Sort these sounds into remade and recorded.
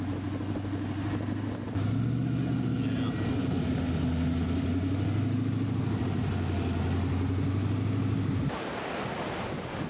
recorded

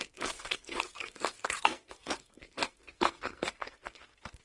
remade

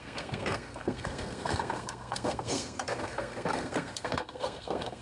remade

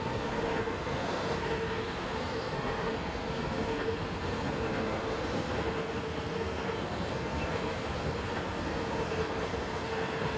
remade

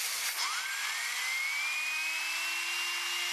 recorded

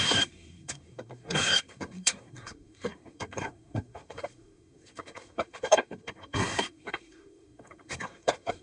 remade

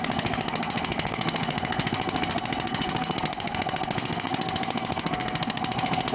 remade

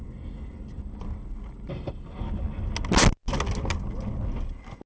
recorded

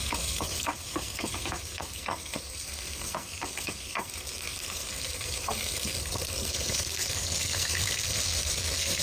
remade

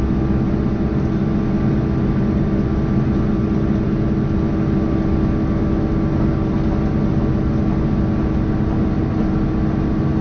recorded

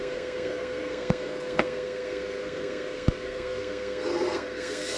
remade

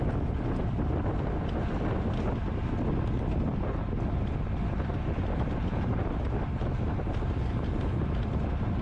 recorded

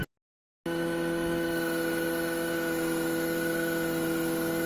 recorded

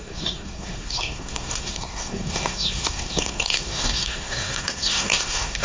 remade